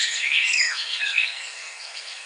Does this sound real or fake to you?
fake